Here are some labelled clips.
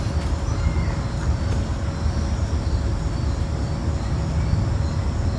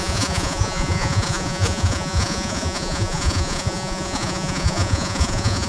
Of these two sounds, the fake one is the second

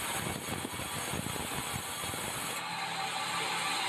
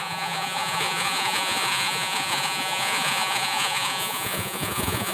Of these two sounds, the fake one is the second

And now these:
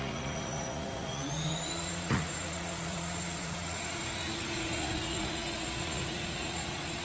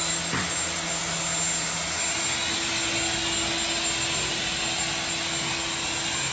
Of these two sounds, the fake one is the first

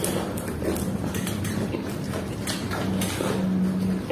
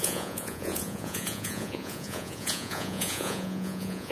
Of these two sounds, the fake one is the second